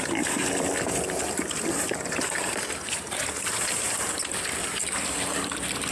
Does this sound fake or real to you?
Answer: fake